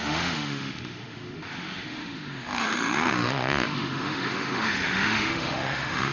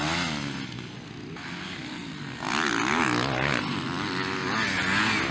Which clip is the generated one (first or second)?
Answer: first